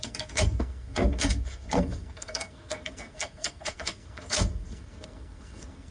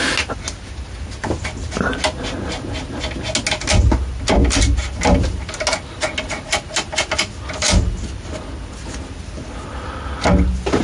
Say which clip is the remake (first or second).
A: first